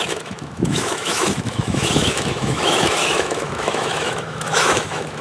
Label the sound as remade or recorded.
remade